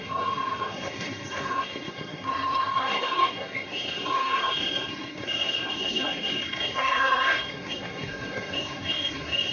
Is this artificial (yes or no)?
yes